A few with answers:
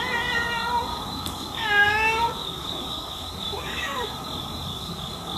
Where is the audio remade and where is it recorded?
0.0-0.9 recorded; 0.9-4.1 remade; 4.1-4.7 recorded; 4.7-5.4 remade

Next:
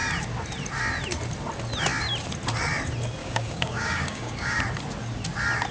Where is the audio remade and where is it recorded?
0.0-3.2 recorded; 3.2-4.6 remade; 4.6-5.7 recorded

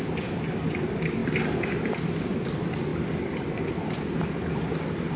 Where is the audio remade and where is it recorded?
0.0-5.2 recorded

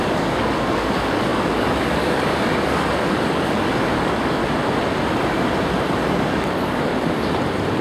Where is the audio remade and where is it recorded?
0.0-4.4 remade; 4.4-6.1 recorded; 6.1-6.9 remade; 6.9-7.8 recorded

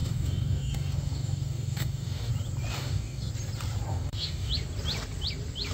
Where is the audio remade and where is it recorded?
0.0-2.3 remade; 2.3-2.7 recorded; 2.7-3.3 remade; 3.3-3.9 recorded; 3.9-4.5 remade; 4.5-5.7 recorded

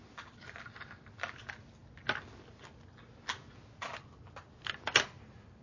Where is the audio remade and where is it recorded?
0.0-5.6 recorded

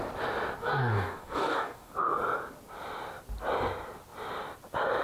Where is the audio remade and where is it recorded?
0.0-0.6 recorded; 0.6-1.9 remade; 1.9-5.0 recorded

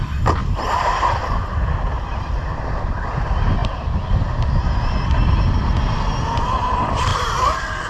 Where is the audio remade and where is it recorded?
0.0-7.9 recorded